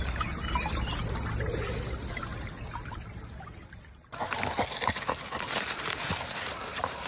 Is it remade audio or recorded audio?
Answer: recorded